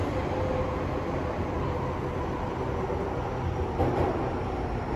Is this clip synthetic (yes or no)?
no